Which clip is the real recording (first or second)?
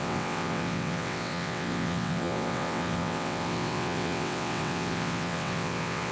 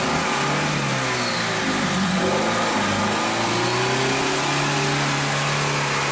second